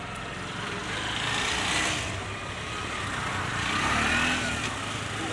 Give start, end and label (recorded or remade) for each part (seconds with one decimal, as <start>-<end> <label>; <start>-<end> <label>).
0.0-0.8 recorded; 0.8-2.9 remade; 2.9-5.3 recorded